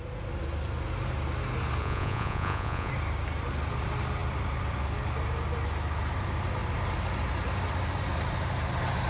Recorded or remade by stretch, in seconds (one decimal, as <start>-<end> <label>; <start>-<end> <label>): 0.0-1.8 recorded; 1.8-2.9 remade; 2.9-9.1 recorded